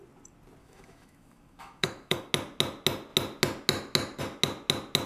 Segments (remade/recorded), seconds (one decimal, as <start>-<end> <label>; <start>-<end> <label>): 0.0-0.6 recorded; 0.6-2.3 remade; 2.3-5.1 recorded

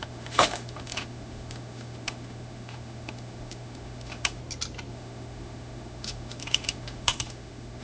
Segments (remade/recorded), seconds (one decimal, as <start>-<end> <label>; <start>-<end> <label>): 0.0-4.4 remade; 4.4-4.9 recorded; 4.9-7.8 remade